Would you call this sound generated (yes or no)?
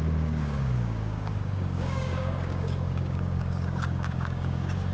yes